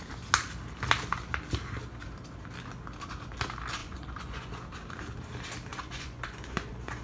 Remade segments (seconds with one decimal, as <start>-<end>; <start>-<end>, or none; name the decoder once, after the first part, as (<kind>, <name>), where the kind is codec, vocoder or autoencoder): 3.8-4.5 (vocoder, Vocos); 5.7-7.0